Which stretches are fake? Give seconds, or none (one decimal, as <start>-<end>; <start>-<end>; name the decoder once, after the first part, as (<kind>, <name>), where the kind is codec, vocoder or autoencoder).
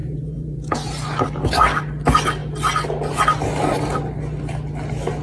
0.0-0.7 (vocoder, Vocos)